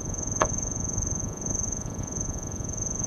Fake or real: fake